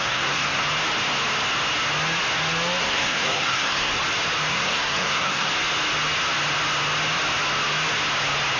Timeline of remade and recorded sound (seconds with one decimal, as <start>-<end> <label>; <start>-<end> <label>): 0.0-0.6 remade; 0.6-2.8 recorded; 2.8-3.9 remade; 3.9-4.5 recorded; 4.5-5.5 remade; 5.5-8.6 recorded